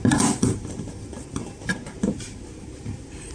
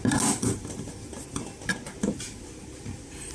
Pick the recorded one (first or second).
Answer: second